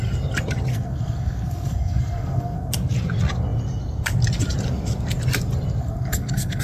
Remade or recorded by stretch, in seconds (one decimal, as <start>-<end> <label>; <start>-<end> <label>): 0.0-0.7 recorded; 0.7-2.7 remade; 2.7-5.8 recorded; 5.8-6.6 remade